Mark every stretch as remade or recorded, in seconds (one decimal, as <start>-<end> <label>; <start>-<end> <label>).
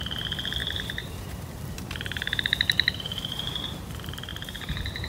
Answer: 0.0-0.6 recorded; 0.6-3.7 remade; 3.7-4.3 recorded; 4.3-5.1 remade